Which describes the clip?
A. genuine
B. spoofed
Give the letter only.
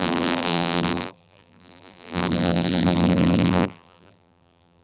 B